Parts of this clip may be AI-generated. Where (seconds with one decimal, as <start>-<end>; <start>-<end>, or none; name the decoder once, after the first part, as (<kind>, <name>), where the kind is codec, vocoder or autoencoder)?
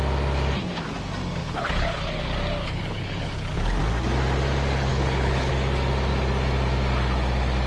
1.4-2.2 (codec, HILCodec); 2.6-3.8; 4.9-5.5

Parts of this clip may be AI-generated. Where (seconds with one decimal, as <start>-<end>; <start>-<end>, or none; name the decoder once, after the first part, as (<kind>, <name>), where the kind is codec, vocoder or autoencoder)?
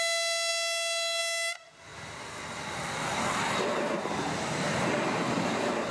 none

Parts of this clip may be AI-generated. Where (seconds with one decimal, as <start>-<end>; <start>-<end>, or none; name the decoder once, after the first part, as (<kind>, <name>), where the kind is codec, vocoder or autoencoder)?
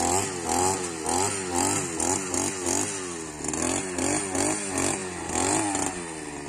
none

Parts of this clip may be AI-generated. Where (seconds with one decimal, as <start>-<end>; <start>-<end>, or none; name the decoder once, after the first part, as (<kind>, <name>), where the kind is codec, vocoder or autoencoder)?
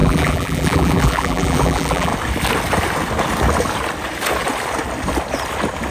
0.0-2.1 (vocoder, BigVGAN v2)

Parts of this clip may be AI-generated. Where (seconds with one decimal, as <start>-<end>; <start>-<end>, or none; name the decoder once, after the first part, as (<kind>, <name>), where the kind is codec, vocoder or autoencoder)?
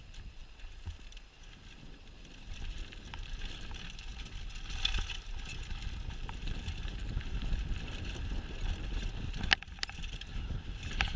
none